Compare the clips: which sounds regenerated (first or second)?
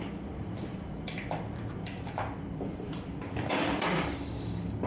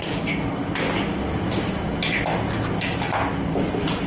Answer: first